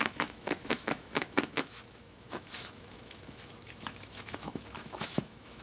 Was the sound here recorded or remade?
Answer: remade